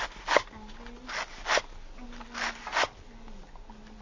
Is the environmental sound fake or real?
real